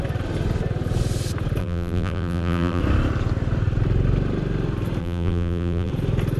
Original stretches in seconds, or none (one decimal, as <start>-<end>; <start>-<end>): 0.0-1.6; 2.8-5.0; 5.9-6.4